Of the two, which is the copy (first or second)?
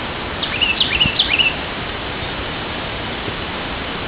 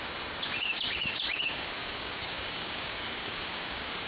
second